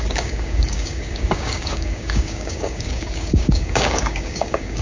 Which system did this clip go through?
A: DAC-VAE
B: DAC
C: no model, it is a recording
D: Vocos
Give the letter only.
B